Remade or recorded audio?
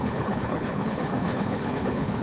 remade